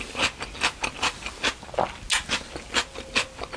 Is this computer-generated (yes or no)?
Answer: no